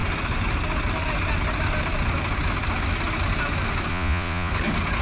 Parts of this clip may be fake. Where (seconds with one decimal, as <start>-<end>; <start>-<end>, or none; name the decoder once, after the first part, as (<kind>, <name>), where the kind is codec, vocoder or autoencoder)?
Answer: 3.9-4.5 (vocoder, Vocos)